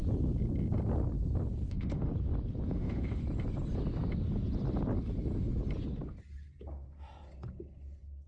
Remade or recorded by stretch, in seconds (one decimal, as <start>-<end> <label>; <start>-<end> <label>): 0.0-1.7 recorded; 1.7-2.1 remade; 2.1-2.7 recorded; 2.7-3.2 remade; 3.2-8.3 recorded